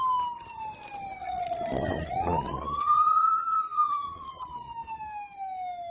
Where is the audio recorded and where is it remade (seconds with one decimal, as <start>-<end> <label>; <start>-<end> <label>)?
0.0-1.2 recorded; 1.2-4.7 remade; 4.7-5.9 recorded